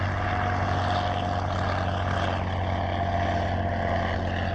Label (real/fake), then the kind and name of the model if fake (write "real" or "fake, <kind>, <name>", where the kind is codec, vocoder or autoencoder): real